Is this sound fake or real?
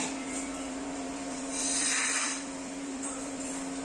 fake